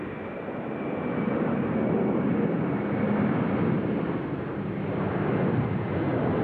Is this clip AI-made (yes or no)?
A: no